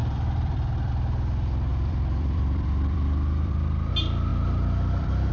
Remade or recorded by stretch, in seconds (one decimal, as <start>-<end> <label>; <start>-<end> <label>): 0.0-0.9 remade; 0.9-1.7 recorded; 1.7-3.9 remade; 3.9-4.3 recorded; 4.3-5.3 remade